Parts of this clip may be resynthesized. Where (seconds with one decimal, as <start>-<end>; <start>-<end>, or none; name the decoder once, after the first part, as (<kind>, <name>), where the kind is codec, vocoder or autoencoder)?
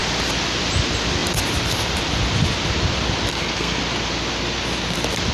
3.3-3.8 (codec, SNAC)